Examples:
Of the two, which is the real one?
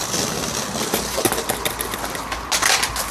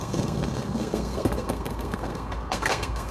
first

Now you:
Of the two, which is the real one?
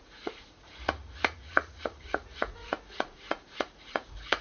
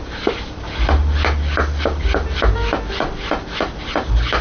second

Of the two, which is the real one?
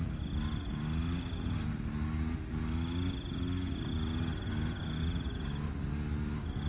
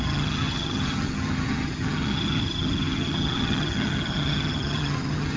first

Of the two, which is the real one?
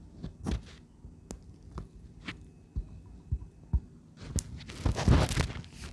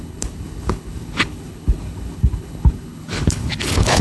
first